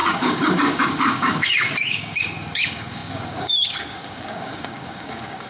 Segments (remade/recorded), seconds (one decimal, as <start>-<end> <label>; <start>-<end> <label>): 0.0-5.5 remade